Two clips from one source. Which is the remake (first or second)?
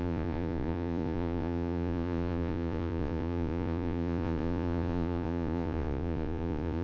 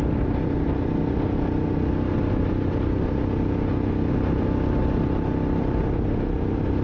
first